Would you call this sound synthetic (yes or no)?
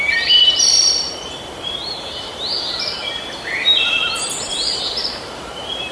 yes